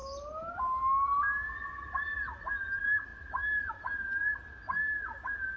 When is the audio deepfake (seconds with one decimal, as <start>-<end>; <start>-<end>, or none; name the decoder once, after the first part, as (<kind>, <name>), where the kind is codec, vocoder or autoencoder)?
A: none